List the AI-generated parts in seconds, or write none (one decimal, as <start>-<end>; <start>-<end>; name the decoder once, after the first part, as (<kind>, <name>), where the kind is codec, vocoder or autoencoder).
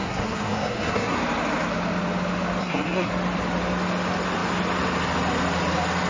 0.0-1.2 (codec, SNAC); 2.6-3.1